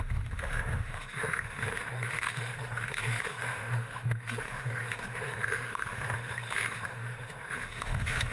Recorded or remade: remade